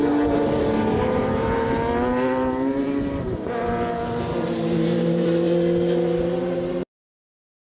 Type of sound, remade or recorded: remade